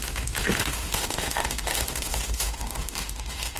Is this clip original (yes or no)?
no